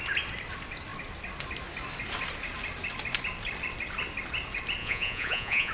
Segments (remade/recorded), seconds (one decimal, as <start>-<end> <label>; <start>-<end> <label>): 0.0-4.8 recorded; 4.8-5.7 remade